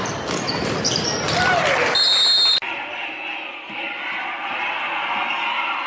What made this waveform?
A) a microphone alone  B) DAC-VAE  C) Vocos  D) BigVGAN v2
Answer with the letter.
A